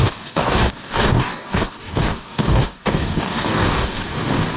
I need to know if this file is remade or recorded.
remade